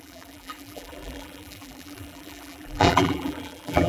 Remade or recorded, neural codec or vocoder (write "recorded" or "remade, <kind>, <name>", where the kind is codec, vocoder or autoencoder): remade, vocoder, BigVGAN v2